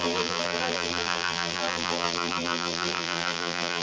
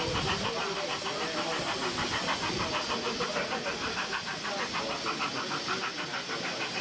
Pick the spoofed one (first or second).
first